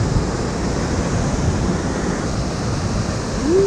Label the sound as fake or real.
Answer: real